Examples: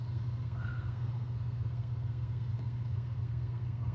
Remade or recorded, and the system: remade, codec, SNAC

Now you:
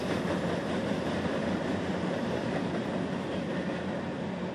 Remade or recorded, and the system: recorded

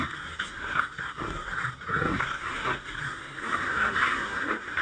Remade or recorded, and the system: remade, codec, SNAC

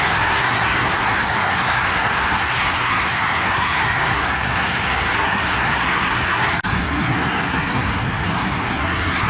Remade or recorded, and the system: remade, codec, SNAC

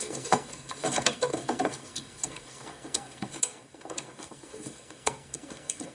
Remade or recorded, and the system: remade, codec, SNAC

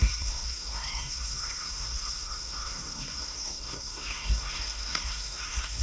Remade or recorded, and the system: remade, codec, SNAC